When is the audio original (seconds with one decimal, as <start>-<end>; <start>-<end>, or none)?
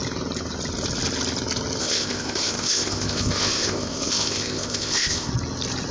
0.0-1.8; 5.3-5.9